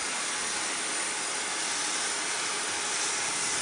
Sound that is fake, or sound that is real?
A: real